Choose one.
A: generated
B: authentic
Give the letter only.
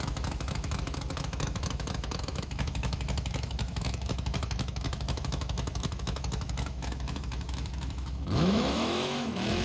A